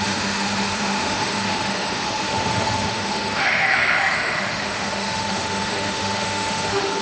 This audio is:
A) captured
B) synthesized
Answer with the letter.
B